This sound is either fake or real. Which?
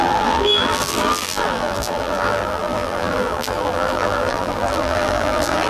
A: fake